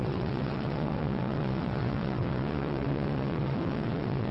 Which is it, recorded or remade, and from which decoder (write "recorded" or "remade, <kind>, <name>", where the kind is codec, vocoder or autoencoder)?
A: remade, vocoder, WaveNeXt